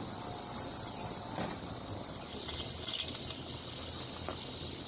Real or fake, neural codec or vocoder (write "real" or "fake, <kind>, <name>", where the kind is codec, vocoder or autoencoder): real